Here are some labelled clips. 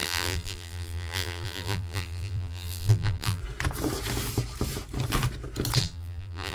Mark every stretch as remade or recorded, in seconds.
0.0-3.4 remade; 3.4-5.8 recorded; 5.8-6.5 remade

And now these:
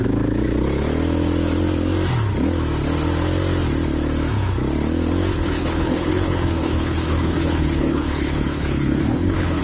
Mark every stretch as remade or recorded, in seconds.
0.0-5.3 recorded; 5.3-9.6 remade

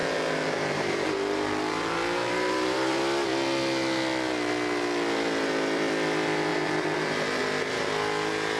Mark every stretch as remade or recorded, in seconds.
0.0-3.0 remade; 3.0-6.5 recorded; 6.5-7.4 remade; 7.4-8.6 recorded

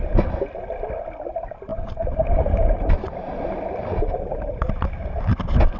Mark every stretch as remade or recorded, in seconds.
0.0-1.7 recorded; 1.7-2.9 remade; 2.9-5.8 recorded

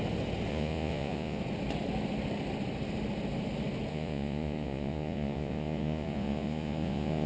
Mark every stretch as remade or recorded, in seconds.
0.0-0.5 recorded; 0.5-1.4 remade; 1.4-3.9 recorded; 3.9-7.3 remade

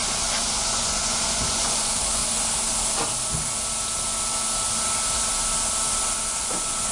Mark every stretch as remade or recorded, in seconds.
0.0-2.2 remade; 2.2-6.3 recorded; 6.3-6.9 remade

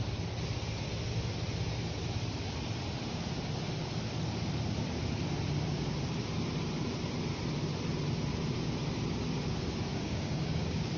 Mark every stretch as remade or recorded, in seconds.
0.0-9.9 recorded; 9.9-11.0 remade

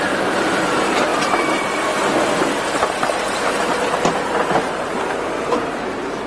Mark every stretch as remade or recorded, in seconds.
0.0-1.1 remade; 1.1-4.9 recorded; 4.9-6.3 remade